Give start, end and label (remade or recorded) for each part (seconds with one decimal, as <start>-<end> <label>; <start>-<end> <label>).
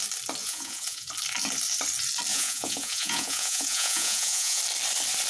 0.0-0.4 recorded; 0.4-1.1 remade; 1.1-2.3 recorded; 2.3-4.6 remade; 4.6-5.3 recorded